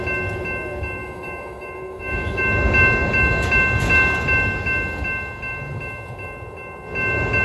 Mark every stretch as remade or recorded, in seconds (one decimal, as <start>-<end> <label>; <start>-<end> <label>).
0.0-1.0 recorded; 1.0-2.4 remade; 2.4-7.4 recorded